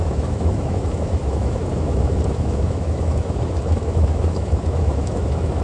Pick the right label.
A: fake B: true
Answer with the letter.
A